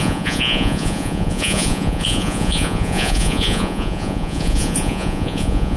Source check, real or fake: fake